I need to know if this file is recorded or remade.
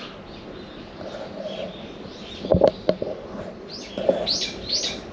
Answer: recorded